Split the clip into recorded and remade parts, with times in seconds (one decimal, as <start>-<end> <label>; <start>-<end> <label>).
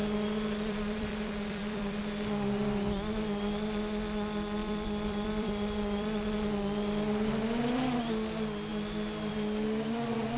0.0-2.0 remade; 2.0-4.6 recorded; 4.6-6.3 remade; 6.3-10.4 recorded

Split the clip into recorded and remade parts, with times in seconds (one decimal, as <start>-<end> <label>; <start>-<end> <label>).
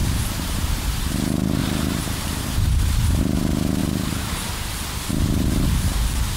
0.0-0.8 remade; 0.8-1.6 recorded; 1.6-2.6 remade; 2.6-3.8 recorded; 3.8-4.3 remade; 4.3-6.4 recorded